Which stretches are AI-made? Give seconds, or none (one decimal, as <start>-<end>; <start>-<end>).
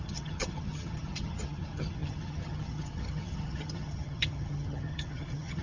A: 0.0-5.6